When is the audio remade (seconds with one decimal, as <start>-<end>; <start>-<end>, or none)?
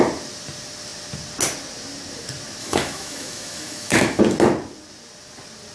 2.6-4.2